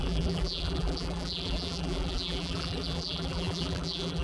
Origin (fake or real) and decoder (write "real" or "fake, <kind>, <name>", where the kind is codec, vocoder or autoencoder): fake, vocoder, BigVGAN v2